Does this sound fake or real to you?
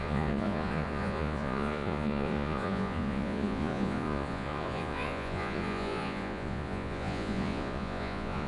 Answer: fake